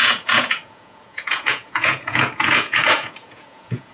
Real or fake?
fake